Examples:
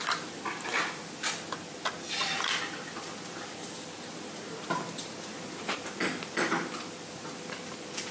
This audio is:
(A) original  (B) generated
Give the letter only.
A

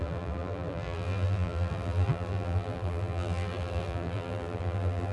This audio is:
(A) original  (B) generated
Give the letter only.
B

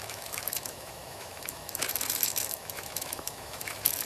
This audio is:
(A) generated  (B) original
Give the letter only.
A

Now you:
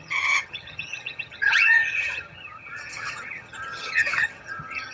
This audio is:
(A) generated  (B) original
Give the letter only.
A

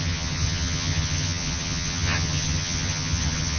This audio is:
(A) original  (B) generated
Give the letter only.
B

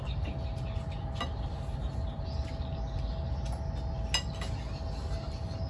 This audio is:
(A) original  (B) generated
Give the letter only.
A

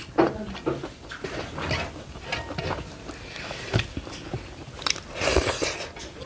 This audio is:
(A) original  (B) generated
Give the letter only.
A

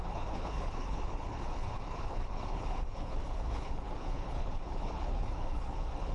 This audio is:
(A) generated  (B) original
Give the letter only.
A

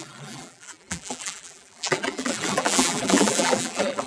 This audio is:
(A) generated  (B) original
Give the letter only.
A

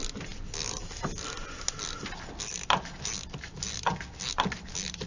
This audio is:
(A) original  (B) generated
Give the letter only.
A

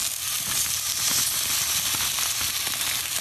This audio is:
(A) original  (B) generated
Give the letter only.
A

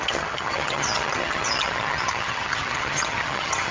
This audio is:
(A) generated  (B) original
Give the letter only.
A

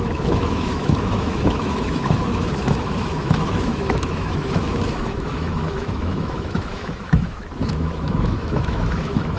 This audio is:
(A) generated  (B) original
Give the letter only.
A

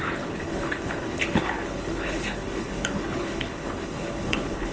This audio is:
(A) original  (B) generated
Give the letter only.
B